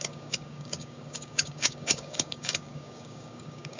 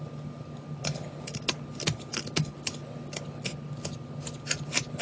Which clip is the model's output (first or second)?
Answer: first